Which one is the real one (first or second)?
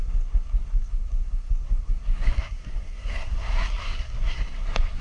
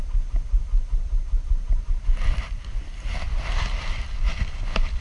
second